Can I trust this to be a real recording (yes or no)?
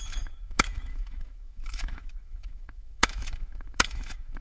no